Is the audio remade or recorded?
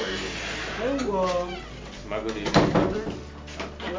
recorded